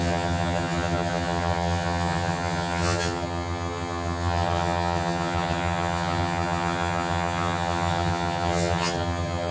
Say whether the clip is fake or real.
fake